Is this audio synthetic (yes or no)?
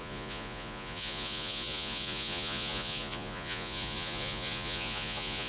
yes